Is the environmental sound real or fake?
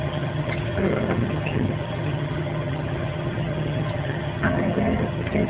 fake